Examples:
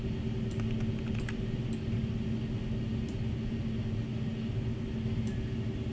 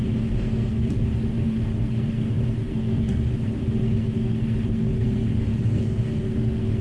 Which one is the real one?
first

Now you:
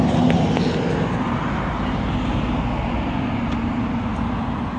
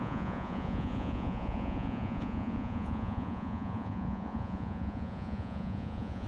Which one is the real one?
first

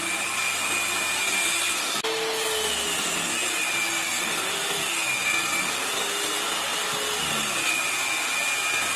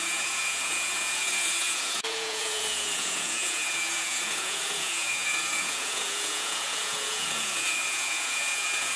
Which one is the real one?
first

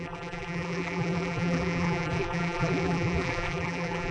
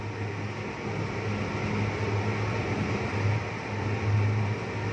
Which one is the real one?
second